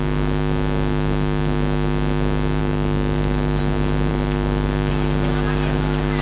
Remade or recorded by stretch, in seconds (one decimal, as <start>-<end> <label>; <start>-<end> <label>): 0.0-2.6 recorded; 2.6-3.6 remade; 3.6-4.1 recorded; 4.1-4.9 remade; 4.9-6.2 recorded